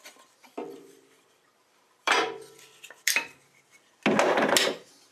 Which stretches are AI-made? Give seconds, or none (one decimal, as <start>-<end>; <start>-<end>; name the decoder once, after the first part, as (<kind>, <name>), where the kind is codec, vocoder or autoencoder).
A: 0.6-3.6 (vocoder, BigVGAN v2)